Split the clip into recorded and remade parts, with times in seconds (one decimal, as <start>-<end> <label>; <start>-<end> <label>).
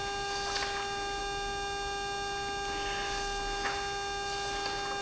0.0-5.0 recorded